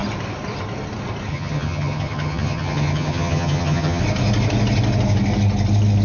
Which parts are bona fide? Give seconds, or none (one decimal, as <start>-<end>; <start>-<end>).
0.0-1.3; 4.0-6.0